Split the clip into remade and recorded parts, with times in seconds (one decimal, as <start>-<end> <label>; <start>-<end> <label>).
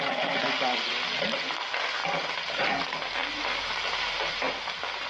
0.0-5.1 recorded